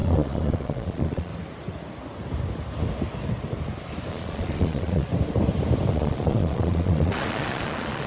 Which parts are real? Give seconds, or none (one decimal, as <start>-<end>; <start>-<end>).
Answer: 1.3-4.1; 5.1-5.9

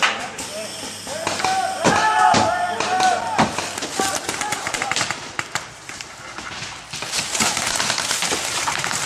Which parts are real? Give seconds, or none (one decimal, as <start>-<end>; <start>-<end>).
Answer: 0.0-9.1

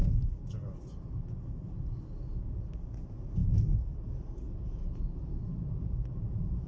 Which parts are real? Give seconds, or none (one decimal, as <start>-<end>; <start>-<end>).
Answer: 0.0-6.7